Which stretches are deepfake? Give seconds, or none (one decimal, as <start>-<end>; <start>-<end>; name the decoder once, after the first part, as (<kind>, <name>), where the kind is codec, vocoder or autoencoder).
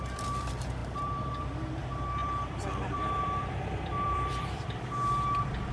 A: 0.0-5.7 (vocoder, BigVGAN v2)